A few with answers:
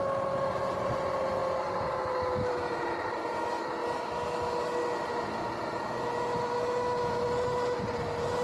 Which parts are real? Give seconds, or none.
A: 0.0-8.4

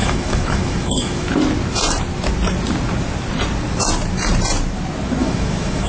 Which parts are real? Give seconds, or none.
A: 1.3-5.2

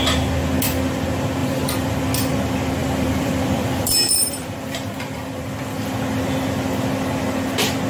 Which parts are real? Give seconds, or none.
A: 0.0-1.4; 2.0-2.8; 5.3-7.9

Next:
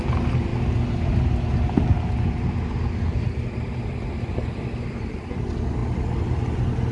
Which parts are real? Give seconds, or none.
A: 0.0-6.9